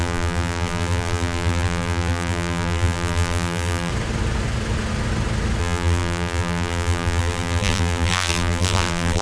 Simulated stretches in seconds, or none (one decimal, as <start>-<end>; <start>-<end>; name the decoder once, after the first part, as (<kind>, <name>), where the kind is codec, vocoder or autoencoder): 0.0-3.9 (vocoder, BigVGAN v2); 5.6-9.2

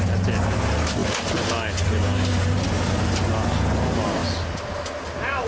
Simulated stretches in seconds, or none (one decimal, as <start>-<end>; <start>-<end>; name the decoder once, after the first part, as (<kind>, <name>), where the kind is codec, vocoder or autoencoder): none

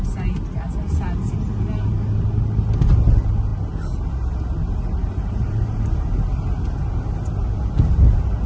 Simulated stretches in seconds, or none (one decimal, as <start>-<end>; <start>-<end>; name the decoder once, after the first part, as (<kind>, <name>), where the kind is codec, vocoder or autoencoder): 5.0-5.7 (vocoder, BigVGAN v2)

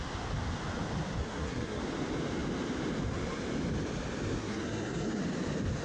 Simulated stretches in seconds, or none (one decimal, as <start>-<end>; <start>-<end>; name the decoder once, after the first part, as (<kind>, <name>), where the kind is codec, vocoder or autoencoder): 1.2-1.8 (codec, SNAC); 4.4-5.2

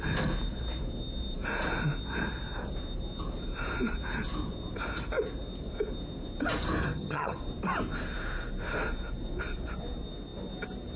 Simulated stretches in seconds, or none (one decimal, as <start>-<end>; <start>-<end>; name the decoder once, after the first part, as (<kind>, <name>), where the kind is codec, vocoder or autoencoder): 6.8-7.4 (vocoder, HiFi-GAN)

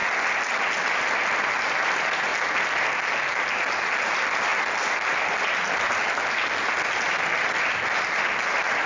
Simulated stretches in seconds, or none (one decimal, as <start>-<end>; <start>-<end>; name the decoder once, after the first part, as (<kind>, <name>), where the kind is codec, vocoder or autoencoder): 0.0-2.3 (vocoder, BigVGAN v2); 3.4-4.5; 6.7-8.9

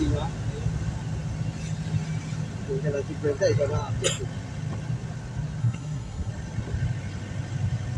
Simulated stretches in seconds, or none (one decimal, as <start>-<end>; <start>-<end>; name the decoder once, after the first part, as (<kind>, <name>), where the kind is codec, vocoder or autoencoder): 5.6-6.3 (codec, SNAC)

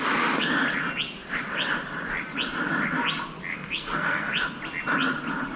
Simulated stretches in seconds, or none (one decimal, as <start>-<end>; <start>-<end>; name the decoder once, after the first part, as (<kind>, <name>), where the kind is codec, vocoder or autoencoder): 3.5-4.3 (codec, SNAC)